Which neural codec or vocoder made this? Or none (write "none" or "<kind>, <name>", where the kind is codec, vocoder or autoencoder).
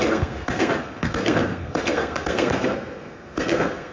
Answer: codec, SNAC